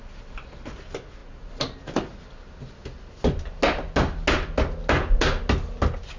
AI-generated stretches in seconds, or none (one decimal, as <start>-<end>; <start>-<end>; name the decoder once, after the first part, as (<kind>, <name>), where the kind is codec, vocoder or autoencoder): 1.2-2.2 (vocoder, BigVGAN v2)